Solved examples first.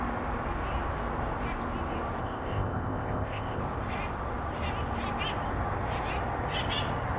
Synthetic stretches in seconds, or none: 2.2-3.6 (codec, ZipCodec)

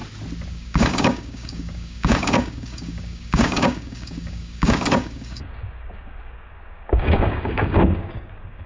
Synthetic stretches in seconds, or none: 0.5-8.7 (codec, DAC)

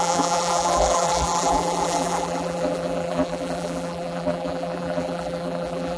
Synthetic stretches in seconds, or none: 0.0-6.0 (vocoder, BigVGAN v2)